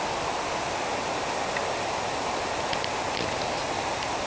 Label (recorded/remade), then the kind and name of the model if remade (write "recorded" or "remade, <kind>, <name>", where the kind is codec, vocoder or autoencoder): recorded